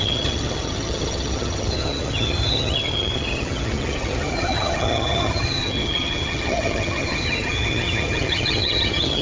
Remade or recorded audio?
remade